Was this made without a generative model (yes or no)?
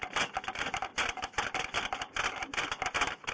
yes